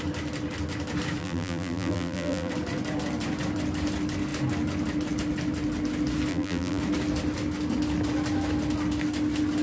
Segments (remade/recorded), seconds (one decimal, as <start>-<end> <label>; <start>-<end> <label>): 0.0-1.2 recorded; 1.2-2.5 remade; 2.5-6.3 recorded; 6.3-6.8 remade; 6.8-9.6 recorded